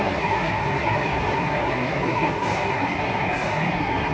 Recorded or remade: remade